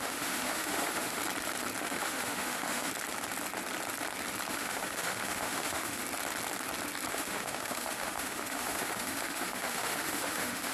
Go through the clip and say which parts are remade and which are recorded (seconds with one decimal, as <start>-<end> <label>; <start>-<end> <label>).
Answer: 0.0-1.2 remade; 1.2-1.8 recorded; 1.8-2.9 remade; 2.9-4.5 recorded; 4.5-6.0 remade; 6.0-7.1 recorded; 7.1-10.7 remade